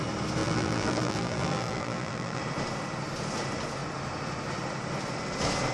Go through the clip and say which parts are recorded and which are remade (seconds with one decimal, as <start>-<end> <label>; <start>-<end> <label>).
0.0-0.4 recorded; 0.4-2.4 remade; 2.4-5.7 recorded